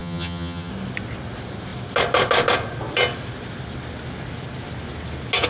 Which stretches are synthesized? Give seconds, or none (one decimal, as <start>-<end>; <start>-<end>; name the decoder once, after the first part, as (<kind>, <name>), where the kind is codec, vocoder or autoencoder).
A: 0.0-0.7 (vocoder, HiFi-GAN)